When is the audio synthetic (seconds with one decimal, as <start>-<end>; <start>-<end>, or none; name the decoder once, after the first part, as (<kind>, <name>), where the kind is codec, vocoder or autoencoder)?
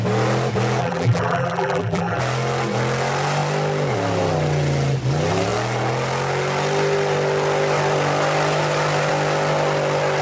0.8-2.2 (vocoder, BigVGAN v2)